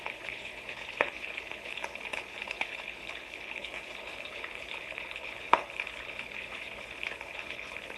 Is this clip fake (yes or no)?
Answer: yes